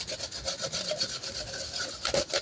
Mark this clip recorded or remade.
recorded